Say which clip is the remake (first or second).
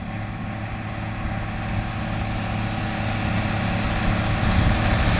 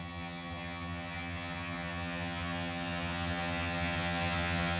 second